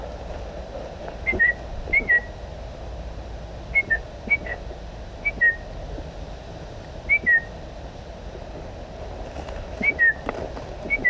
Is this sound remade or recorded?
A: recorded